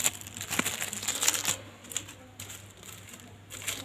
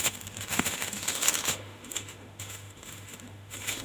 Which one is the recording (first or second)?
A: first